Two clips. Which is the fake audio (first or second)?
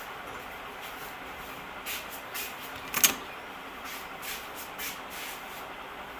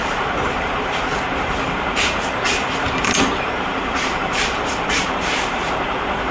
second